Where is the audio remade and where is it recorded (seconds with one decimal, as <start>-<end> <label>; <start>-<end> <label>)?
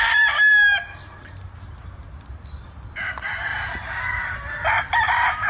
0.0-5.5 recorded